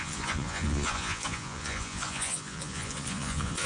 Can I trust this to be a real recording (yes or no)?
no